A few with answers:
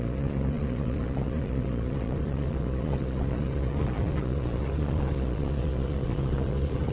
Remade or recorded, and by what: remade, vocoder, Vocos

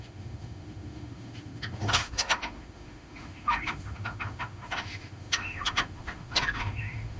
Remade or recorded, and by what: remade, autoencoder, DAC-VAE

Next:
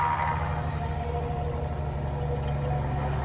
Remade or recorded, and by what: recorded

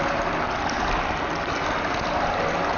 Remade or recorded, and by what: recorded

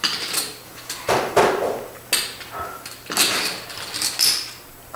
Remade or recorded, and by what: recorded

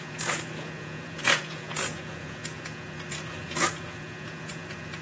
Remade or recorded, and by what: remade, vocoder, Vocos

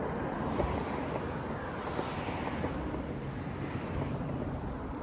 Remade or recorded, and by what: recorded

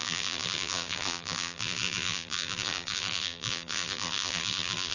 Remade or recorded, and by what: remade, vocoder, BigVGAN v2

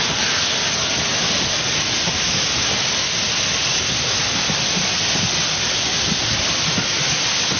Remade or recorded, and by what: recorded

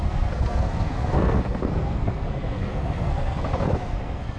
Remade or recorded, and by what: remade, codec, SNAC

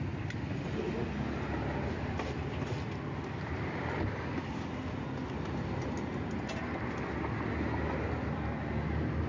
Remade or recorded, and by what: recorded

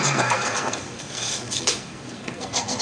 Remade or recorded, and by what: remade, codec, SNAC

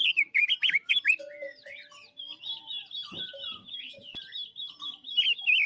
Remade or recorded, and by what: recorded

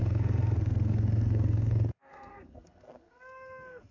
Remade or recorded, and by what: remade, codec, SNAC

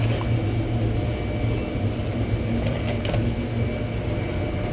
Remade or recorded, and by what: recorded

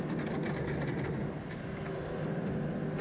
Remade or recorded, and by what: recorded